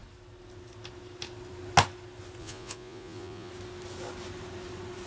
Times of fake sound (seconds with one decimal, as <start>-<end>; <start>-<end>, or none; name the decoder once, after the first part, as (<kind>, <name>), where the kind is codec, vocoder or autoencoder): 2.4-3.5 (vocoder, Vocos)